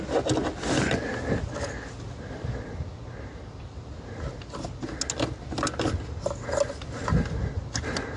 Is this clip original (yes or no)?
yes